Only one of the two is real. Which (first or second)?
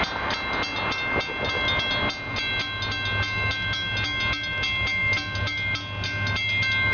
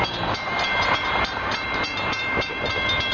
first